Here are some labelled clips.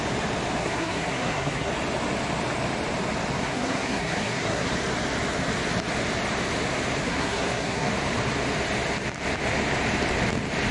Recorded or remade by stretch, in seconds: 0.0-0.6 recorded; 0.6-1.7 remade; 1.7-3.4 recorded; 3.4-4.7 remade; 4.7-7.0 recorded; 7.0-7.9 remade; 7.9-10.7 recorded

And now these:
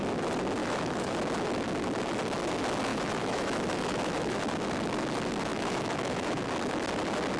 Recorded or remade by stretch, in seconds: 0.0-0.6 recorded; 0.6-1.1 remade; 1.1-2.9 recorded; 2.9-4.4 remade; 4.4-5.5 recorded; 5.5-6.4 remade; 6.4-7.4 recorded